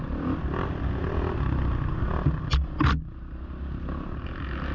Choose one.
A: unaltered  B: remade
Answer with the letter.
A